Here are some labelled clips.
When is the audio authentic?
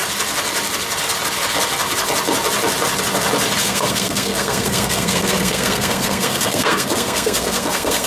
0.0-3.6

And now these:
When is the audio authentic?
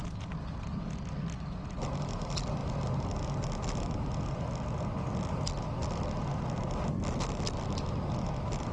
0.0-8.7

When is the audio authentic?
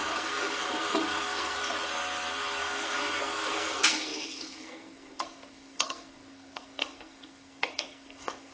1.6-2.6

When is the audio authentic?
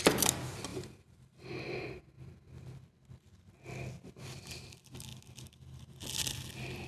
0.0-6.9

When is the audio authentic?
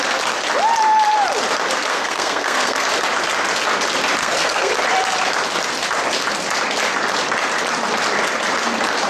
0.0-1.9; 2.9-4.2; 4.7-9.1